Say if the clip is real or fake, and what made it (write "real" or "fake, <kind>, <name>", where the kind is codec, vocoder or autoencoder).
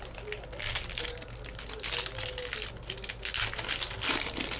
real